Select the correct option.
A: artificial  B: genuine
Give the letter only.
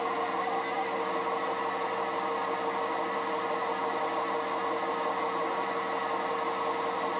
B